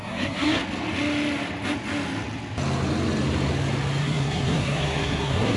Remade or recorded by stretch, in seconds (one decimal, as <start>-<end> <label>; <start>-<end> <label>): 0.0-0.6 remade; 0.6-4.0 recorded; 4.0-5.6 remade